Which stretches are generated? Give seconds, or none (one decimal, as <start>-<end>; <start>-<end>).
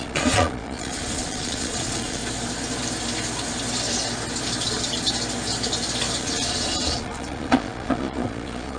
0.0-2.2; 6.2-8.8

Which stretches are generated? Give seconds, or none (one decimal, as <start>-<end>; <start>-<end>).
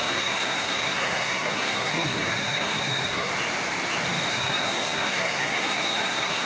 0.0-3.3; 4.3-6.5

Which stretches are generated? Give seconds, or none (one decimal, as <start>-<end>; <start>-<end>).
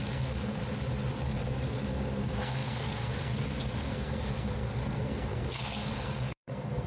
0.0-0.6; 1.2-6.9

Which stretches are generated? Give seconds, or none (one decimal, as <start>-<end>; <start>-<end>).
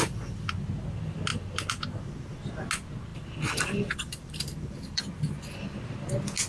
1.3-2.5; 3.1-5.0